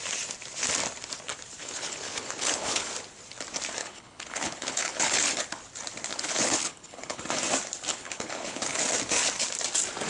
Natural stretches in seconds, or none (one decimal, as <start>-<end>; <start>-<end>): 0.0-1.6; 2.9-3.8; 5.3-6.1; 7.2-7.9; 8.8-10.1